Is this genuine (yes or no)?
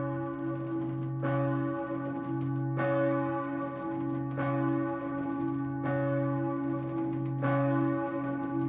yes